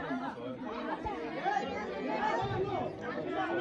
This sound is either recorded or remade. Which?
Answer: recorded